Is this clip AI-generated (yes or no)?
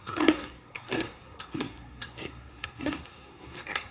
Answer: yes